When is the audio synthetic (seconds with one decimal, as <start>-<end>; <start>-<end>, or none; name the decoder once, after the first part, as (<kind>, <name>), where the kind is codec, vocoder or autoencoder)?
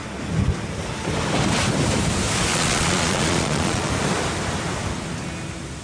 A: 2.5-3.9 (vocoder, Vocos)